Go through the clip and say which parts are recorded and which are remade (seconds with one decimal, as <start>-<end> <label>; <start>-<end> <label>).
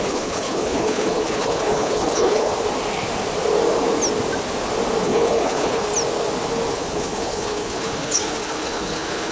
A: 0.0-2.5 remade; 2.5-5.0 recorded; 5.0-5.9 remade; 5.9-6.7 recorded; 6.7-9.3 remade